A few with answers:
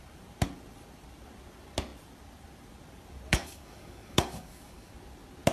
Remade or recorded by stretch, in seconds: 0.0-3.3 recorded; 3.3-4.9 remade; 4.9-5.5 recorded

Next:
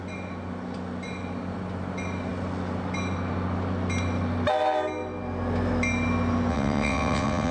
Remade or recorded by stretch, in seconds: 0.0-6.5 recorded; 6.5-7.5 remade

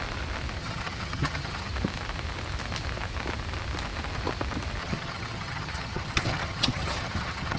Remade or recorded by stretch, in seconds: 0.0-0.6 recorded; 0.6-1.7 remade; 1.7-4.8 recorded; 4.8-7.6 remade

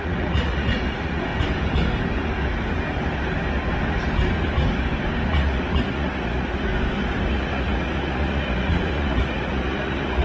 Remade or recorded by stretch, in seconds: 0.0-1.3 remade; 1.3-5.3 recorded; 5.3-6.7 remade; 6.7-7.3 recorded; 7.3-10.2 remade